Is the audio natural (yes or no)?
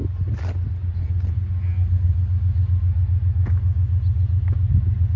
yes